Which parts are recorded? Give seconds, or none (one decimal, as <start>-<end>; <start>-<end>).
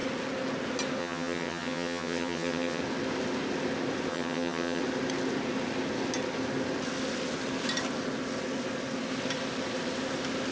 0.0-1.0; 2.8-4.1; 4.8-10.5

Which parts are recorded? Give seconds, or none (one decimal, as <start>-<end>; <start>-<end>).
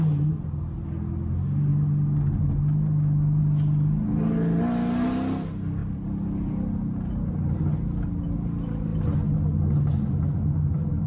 0.0-5.8; 6.5-11.1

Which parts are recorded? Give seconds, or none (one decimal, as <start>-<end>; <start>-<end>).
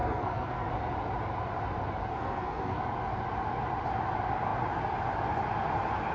0.7-2.1; 2.8-6.1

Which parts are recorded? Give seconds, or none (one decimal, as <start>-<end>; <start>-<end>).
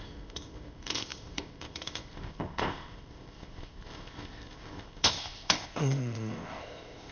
none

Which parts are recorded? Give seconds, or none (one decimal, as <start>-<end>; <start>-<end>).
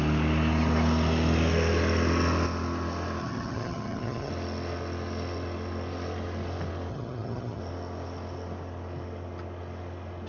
0.0-3.2; 4.3-6.9; 7.6-10.3